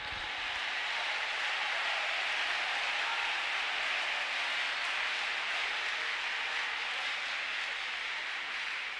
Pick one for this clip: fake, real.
real